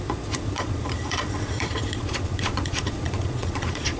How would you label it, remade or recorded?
remade